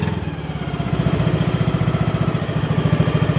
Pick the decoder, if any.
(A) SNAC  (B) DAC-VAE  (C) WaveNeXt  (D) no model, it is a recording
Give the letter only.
D